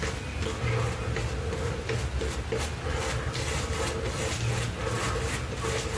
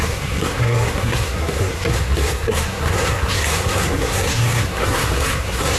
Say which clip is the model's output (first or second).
second